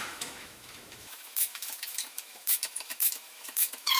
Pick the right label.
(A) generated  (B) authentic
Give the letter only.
A